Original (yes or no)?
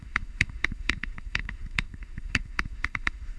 no